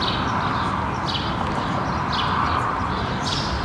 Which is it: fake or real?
real